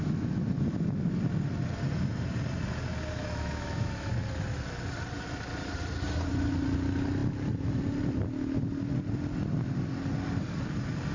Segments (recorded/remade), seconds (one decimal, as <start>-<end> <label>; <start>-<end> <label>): 0.0-3.2 recorded; 3.2-4.1 remade; 4.1-11.1 recorded